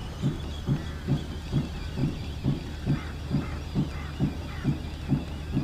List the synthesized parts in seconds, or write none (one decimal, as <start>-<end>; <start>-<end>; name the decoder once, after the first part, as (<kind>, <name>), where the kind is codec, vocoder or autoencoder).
0.0-0.9 (vocoder, BigVGAN v2); 2.0-2.7